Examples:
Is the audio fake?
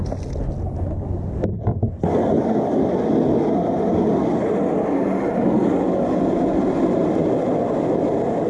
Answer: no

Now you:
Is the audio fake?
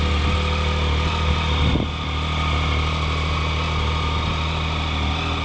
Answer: no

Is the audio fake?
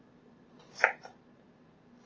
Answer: no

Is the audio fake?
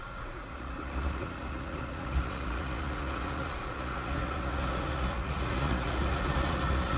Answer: yes